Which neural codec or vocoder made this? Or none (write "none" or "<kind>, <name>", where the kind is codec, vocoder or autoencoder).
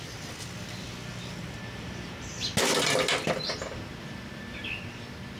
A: none